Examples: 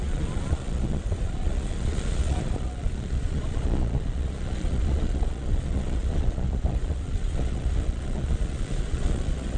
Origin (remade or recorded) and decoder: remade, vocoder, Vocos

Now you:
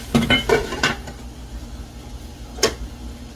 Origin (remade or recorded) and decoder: recorded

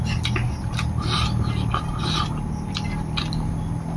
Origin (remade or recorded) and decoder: recorded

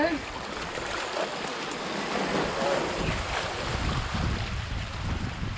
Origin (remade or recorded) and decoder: recorded